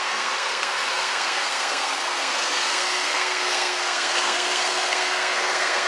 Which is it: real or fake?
fake